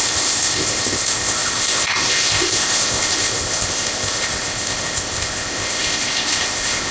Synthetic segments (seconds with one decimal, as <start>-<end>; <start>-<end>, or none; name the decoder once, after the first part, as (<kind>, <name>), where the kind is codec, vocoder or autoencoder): 0.0-6.9 (codec, ZipCodec)